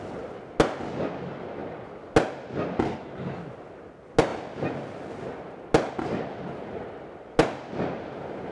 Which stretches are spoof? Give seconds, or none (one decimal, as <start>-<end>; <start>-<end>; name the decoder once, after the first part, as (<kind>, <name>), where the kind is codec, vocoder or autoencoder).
none